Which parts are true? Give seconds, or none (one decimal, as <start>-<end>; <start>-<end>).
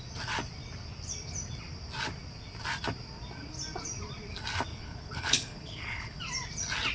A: 0.0-4.7; 6.2-6.9